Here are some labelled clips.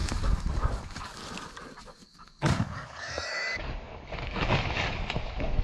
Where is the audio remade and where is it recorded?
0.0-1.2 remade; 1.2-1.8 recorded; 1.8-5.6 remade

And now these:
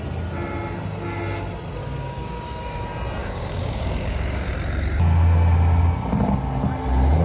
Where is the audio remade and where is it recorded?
0.0-1.8 recorded; 1.8-2.8 remade; 2.8-3.2 recorded; 3.2-4.5 remade; 4.5-7.2 recorded

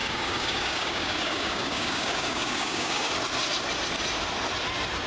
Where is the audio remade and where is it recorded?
0.0-3.1 remade; 3.1-5.1 recorded

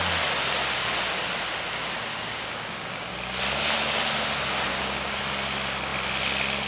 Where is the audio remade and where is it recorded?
0.0-2.1 recorded; 2.1-3.1 remade; 3.1-4.7 recorded; 4.7-5.2 remade; 5.2-6.7 recorded